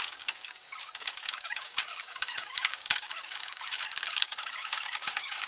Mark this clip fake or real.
fake